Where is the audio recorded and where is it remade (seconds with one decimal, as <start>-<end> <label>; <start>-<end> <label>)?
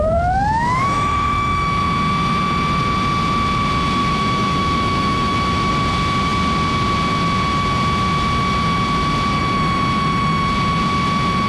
0.0-0.8 recorded; 0.8-1.8 remade; 1.8-4.0 recorded; 4.0-5.7 remade; 5.7-11.5 recorded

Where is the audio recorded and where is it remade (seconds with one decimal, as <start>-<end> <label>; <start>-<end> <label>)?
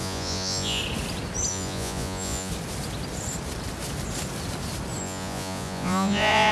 0.0-0.8 remade; 0.8-1.5 recorded; 1.5-2.5 remade; 2.5-5.0 recorded; 5.0-6.5 remade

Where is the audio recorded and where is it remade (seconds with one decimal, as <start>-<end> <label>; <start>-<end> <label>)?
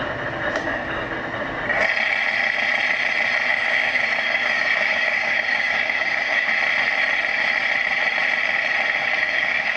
0.0-0.6 recorded; 0.6-1.1 remade; 1.1-3.5 recorded; 3.5-6.5 remade; 6.5-9.0 recorded; 9.0-9.8 remade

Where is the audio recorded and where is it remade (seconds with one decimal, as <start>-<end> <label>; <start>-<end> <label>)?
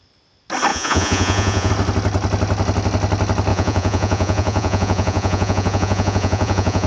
0.0-0.7 recorded; 0.7-1.7 remade; 1.7-3.5 recorded; 3.5-6.9 remade